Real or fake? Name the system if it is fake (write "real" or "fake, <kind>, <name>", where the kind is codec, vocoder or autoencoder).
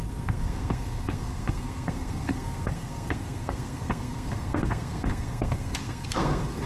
fake, codec, SNAC